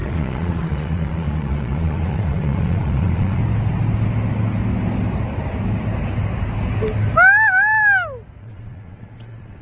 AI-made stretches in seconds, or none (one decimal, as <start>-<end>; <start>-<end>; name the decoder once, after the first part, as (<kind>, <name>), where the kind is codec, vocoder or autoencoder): 0.0-3.4 (vocoder, Vocos); 8.4-9.6